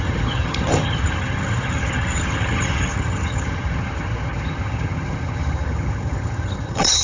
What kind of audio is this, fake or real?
fake